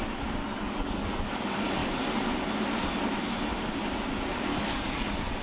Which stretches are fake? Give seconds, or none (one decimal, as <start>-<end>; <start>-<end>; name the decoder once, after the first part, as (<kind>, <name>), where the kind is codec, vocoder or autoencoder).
0.4-1.2 (codec, DAC); 4.5-5.4